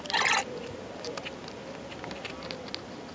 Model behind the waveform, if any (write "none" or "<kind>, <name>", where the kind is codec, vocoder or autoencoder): none